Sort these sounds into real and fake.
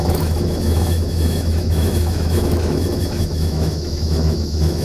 fake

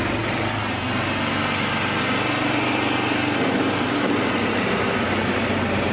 real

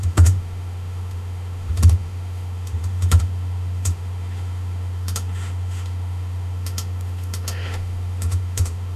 fake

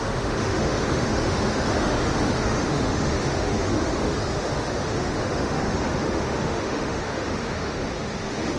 fake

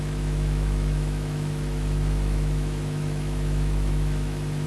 fake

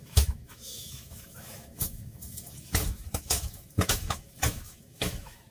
fake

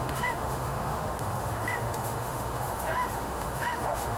fake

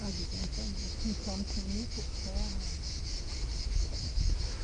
fake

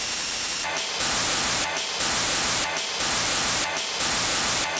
real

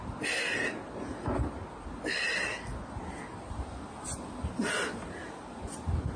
real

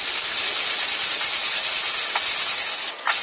real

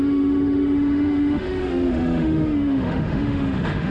fake